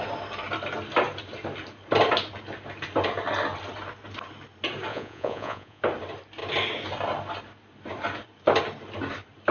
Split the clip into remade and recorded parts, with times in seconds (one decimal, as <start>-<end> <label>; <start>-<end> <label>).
0.0-4.9 recorded; 4.9-5.8 remade; 5.8-9.5 recorded

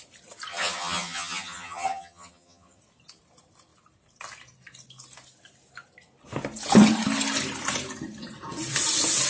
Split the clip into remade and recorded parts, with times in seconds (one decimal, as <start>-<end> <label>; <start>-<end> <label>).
0.0-0.5 recorded; 0.5-2.8 remade; 2.8-9.3 recorded

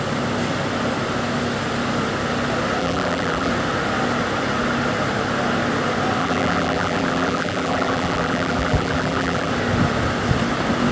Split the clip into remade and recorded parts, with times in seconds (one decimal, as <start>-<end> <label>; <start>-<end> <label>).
0.0-2.8 recorded; 2.8-3.5 remade; 3.5-6.2 recorded; 6.2-9.5 remade; 9.5-10.9 recorded

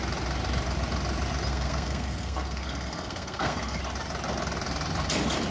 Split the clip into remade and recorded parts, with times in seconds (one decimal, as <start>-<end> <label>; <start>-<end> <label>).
0.0-1.5 recorded; 1.5-3.8 remade; 3.8-5.5 recorded